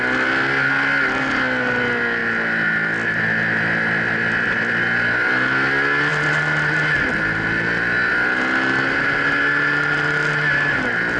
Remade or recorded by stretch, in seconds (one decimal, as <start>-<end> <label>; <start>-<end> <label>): 0.0-11.2 recorded